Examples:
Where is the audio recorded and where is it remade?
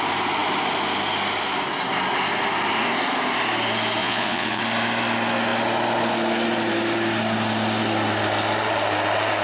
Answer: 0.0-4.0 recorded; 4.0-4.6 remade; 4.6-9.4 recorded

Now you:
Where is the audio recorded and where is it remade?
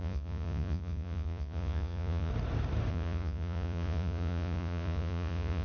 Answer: 0.0-2.3 remade; 2.3-2.9 recorded; 2.9-5.6 remade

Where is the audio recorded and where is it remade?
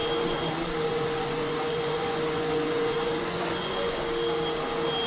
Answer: 0.0-0.5 remade; 0.5-0.9 recorded; 0.9-4.0 remade; 4.0-5.1 recorded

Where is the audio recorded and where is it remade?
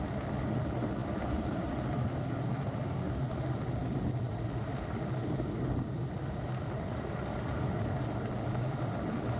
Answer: 0.0-9.4 recorded